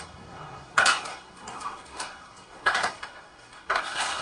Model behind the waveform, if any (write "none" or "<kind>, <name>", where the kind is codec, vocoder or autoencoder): codec, SNAC